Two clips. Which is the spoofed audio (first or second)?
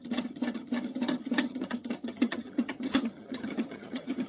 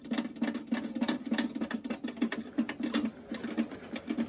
first